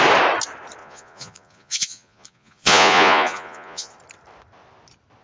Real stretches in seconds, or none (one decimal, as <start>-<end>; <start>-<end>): 0.0-0.8; 3.9-5.2